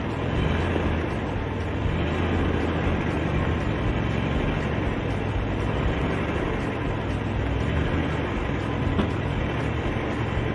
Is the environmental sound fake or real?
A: real